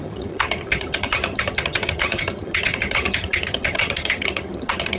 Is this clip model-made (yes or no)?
yes